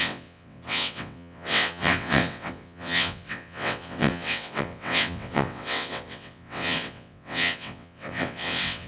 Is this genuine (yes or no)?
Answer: no